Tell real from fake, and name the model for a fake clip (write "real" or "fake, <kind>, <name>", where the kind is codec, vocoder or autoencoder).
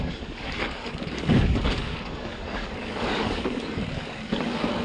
fake, codec, DAC